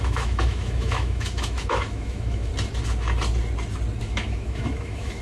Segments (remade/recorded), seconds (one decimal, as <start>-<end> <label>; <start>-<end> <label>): 0.0-2.5 remade; 2.5-4.0 recorded; 4.0-5.2 remade